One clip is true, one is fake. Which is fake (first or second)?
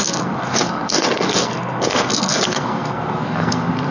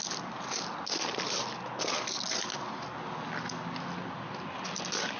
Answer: first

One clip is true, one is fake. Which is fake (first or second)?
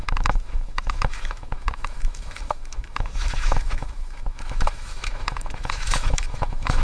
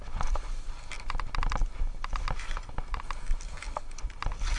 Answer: first